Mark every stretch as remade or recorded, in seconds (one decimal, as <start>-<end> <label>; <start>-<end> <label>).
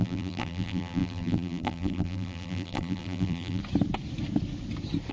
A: 0.0-3.6 remade; 3.6-5.1 recorded